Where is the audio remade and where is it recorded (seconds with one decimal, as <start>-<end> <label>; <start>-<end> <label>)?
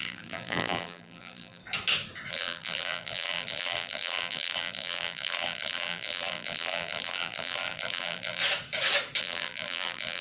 0.0-1.6 remade; 1.6-2.3 recorded; 2.3-8.4 remade; 8.4-9.2 recorded; 9.2-10.2 remade